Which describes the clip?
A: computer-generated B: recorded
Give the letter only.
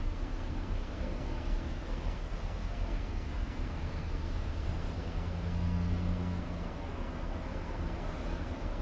A